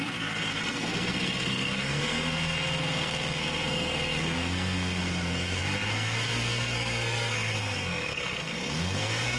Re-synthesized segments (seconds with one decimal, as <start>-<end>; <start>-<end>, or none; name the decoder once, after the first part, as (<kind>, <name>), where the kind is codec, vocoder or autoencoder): 0.0-9.4 (codec, SNAC)